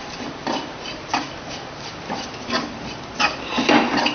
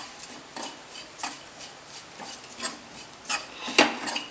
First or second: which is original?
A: second